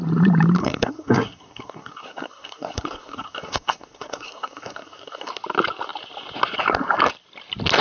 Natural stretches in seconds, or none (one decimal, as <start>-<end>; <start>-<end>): 0.0-0.6; 5.3-7.8